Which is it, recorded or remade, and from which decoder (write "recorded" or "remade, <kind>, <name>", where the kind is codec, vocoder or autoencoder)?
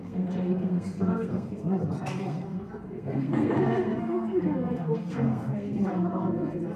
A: remade, codec, SNAC